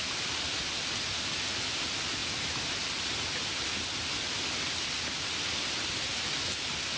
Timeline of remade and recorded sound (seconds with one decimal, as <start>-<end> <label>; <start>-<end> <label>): 0.0-2.2 recorded; 2.2-5.9 remade; 5.9-7.0 recorded